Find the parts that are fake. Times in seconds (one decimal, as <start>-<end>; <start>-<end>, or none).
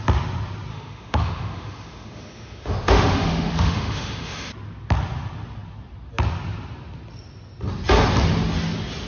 0.7-4.5